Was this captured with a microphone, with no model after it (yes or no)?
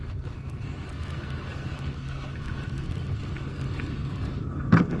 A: no